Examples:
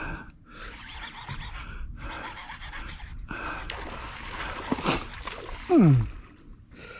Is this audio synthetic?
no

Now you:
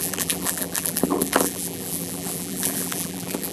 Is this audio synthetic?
yes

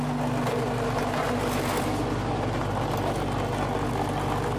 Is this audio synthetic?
no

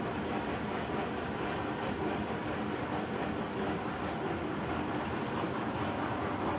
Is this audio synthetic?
no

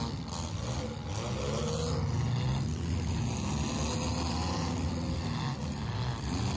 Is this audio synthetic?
no